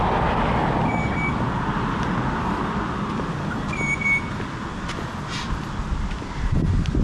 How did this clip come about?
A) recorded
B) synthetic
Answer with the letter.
A